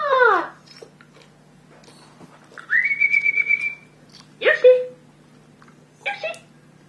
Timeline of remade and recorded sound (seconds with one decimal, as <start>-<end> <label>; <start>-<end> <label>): 0.0-6.9 recorded